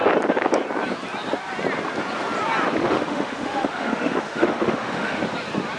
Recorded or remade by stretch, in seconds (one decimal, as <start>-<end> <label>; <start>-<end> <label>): 0.0-2.8 recorded; 2.8-5.2 remade; 5.2-5.8 recorded